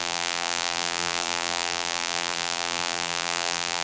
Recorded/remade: remade